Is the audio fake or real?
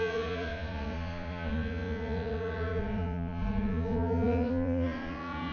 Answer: fake